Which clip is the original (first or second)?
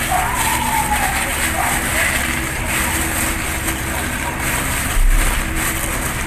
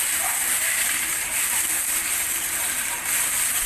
first